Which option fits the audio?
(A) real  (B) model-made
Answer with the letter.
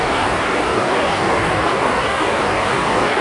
B